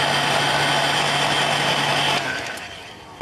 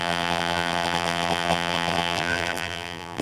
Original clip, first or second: first